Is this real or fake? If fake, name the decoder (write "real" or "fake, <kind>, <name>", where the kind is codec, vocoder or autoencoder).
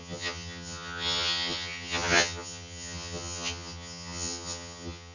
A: fake, vocoder, HiFi-GAN